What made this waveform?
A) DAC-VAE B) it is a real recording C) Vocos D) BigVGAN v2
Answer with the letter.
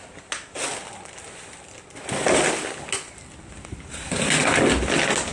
B